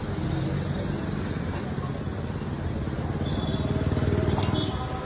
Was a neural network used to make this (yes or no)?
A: no